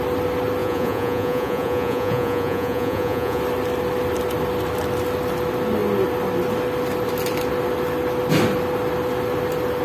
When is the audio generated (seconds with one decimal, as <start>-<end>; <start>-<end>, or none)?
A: 0.6-3.4